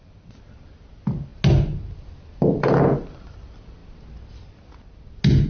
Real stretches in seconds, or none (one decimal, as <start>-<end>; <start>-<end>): 1.3-2.3; 3.8-5.5